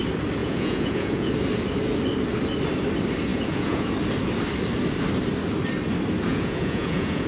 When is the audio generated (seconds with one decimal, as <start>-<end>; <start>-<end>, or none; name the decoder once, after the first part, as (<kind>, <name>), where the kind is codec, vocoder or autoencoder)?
0.4-1.3 (vocoder, Vocos); 3.3-3.9; 6.3-7.3